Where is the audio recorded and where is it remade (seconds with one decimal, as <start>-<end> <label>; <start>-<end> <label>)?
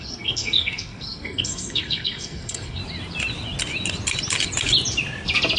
0.0-2.8 remade; 2.8-5.6 recorded